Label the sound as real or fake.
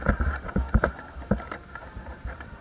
fake